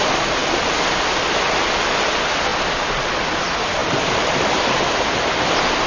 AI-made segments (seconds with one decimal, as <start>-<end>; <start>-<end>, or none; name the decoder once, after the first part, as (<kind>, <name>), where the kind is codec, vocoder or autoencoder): none